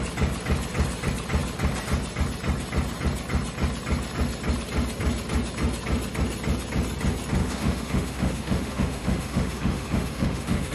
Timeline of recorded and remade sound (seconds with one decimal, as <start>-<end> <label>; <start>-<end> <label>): 0.0-7.4 recorded; 7.4-10.7 remade